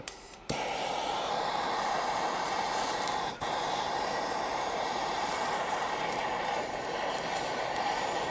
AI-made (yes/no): yes